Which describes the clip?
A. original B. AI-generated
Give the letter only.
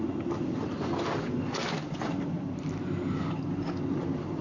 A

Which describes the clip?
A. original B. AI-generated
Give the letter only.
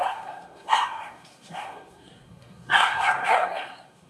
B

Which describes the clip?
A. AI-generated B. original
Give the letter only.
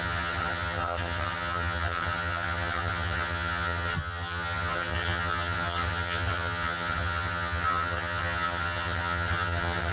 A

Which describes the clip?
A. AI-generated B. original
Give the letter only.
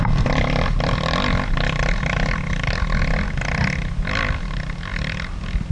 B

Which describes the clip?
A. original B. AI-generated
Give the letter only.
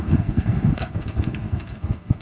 B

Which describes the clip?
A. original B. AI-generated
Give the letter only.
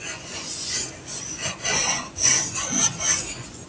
B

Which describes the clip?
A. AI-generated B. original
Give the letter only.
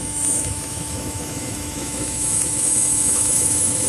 A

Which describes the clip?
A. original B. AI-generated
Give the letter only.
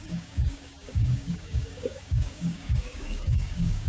B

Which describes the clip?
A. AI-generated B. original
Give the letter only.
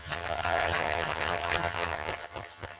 A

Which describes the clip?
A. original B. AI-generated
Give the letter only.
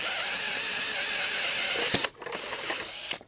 A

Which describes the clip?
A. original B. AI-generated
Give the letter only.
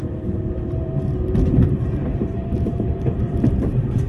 B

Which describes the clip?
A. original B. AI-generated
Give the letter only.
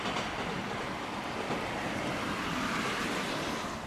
A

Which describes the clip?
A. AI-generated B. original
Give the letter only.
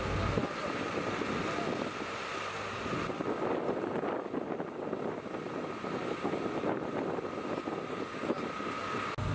B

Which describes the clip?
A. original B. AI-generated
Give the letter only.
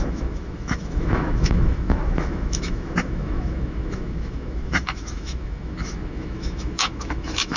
B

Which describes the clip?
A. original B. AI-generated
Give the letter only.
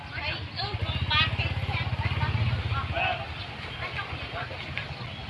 A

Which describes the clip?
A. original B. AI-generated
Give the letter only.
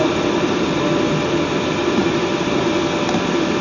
A